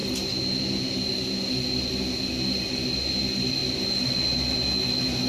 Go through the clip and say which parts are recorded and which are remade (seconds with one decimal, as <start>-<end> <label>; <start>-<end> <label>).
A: 0.0-5.3 recorded